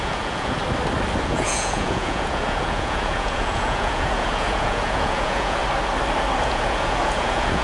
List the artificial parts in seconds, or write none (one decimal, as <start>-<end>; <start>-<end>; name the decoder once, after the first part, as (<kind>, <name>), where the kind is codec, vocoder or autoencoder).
0.0-0.6 (vocoder, Vocos); 1.2-5.6; 6.4-7.6